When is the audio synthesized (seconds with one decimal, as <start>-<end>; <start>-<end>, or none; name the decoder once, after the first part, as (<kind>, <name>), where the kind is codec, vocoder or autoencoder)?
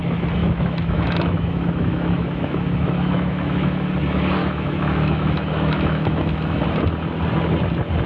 0.4-3.9 (autoencoder, DAC-VAE); 4.4-6.6